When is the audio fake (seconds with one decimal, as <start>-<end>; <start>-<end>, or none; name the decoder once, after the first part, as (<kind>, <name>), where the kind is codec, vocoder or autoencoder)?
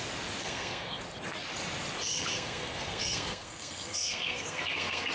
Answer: 0.4-1.0 (codec, SNAC); 2.0-5.1